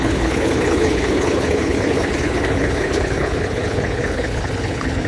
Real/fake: fake